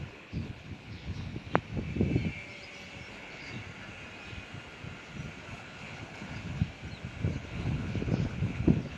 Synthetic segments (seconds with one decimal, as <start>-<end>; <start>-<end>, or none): 0.0-1.3; 3.1-3.5; 5.4-6.6; 7.3-9.0